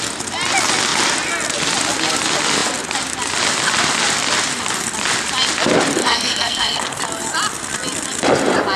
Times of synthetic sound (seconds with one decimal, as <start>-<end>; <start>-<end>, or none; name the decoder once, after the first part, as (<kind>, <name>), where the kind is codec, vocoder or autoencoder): 6.0-7.0 (codec, SNAC)